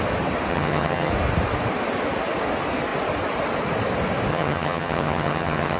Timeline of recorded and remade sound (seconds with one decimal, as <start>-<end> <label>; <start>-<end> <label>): 0.0-0.5 recorded; 0.5-1.1 remade; 1.1-4.3 recorded; 4.3-5.8 remade